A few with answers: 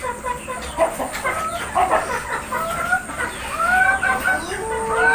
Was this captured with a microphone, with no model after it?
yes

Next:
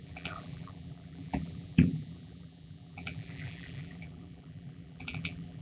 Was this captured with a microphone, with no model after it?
no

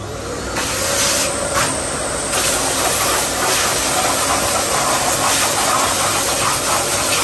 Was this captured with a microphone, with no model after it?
no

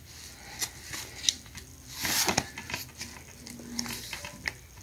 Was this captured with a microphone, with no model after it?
yes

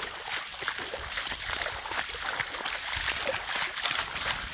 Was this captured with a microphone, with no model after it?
yes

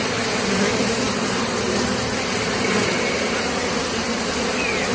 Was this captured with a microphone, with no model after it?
no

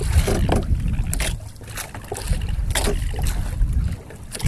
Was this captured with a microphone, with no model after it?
yes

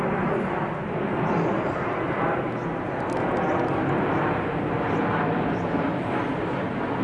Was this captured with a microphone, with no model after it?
yes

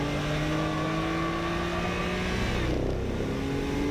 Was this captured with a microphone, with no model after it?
yes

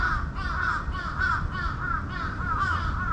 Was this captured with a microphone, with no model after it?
yes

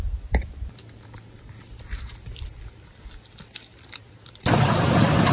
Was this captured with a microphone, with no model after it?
no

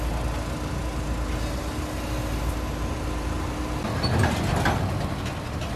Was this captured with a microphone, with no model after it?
yes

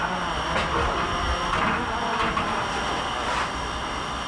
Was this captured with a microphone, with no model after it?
yes